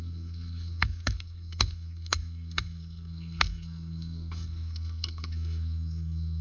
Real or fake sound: fake